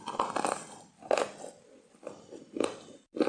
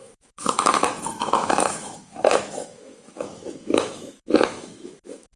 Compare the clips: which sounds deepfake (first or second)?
second